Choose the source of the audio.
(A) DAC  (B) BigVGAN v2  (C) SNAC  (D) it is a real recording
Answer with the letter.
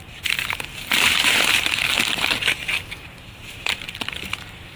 B